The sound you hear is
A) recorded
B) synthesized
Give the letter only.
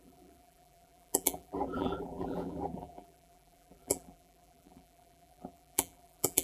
B